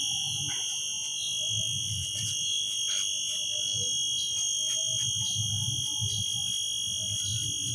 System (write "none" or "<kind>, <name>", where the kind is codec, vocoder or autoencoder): none